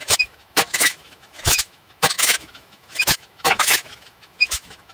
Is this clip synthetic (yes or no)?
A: yes